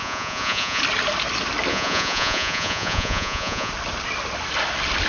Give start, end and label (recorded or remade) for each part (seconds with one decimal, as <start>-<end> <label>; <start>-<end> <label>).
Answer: 0.0-0.8 remade; 0.8-1.7 recorded; 1.7-3.7 remade; 3.7-5.1 recorded